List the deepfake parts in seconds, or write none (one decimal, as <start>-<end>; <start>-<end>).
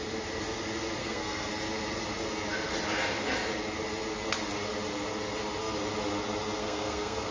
1.0-1.5; 6.6-7.3